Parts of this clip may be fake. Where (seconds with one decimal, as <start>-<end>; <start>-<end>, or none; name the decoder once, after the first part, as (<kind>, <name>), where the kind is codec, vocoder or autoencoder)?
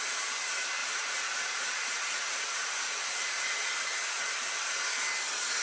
0.8-4.2 (vocoder, Vocos)